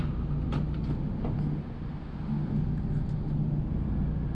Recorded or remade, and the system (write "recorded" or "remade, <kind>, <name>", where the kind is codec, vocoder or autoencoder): recorded